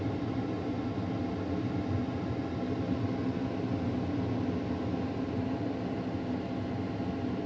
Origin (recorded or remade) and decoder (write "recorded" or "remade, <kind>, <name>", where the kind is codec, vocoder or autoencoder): recorded